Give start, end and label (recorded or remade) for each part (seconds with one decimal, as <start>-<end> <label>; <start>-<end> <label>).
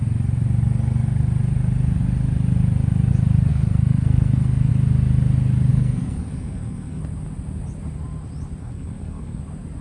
0.0-3.5 recorded; 3.5-4.7 remade; 4.7-5.7 recorded; 5.7-7.0 remade; 7.0-8.6 recorded; 8.6-9.4 remade; 9.4-9.8 recorded